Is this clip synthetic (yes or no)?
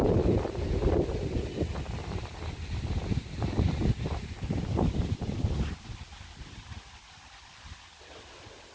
no